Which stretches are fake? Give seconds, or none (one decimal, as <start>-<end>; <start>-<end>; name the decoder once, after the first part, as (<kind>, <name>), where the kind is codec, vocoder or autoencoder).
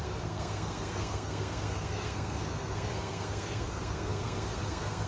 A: 0.0-5.1 (codec, SNAC)